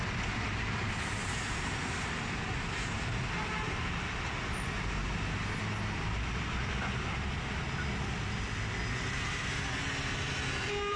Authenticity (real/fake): real